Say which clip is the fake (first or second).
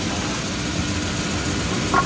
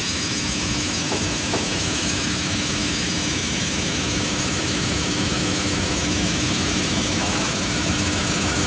second